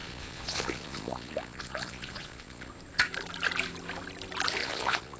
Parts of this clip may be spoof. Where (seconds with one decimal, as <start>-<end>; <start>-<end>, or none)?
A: 0.0-2.7; 4.6-5.2